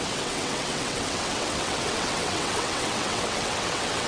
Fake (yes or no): yes